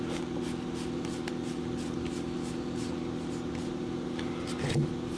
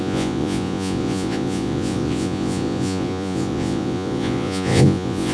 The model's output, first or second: second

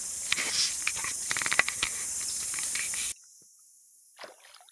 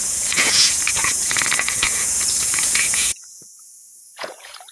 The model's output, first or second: second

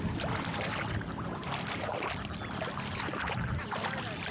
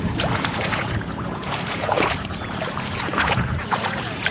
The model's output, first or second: second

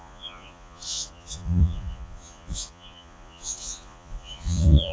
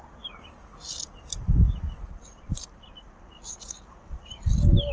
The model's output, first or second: first